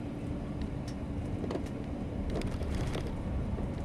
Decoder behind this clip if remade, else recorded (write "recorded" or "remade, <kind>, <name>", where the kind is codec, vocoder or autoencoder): remade, vocoder, BigVGAN v2